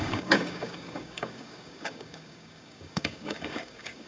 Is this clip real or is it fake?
fake